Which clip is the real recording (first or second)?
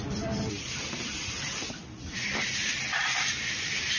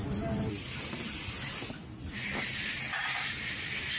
second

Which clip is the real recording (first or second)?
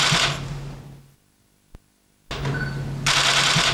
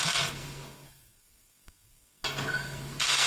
first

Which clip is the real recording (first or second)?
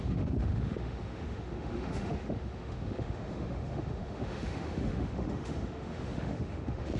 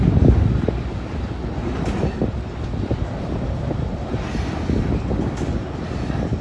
second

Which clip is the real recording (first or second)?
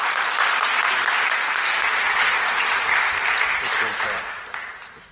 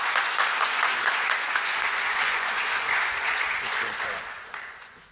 first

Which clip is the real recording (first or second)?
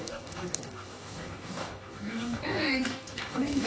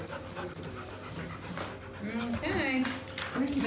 second